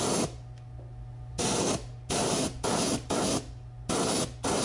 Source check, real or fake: real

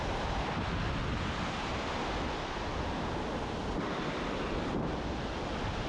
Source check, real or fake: real